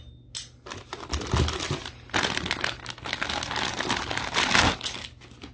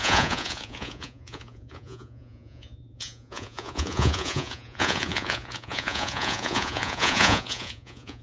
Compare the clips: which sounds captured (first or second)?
first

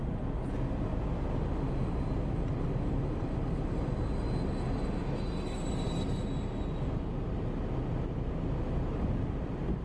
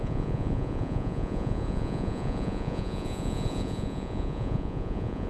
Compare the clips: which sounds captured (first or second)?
first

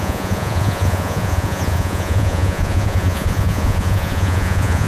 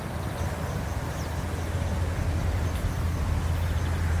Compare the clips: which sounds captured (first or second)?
second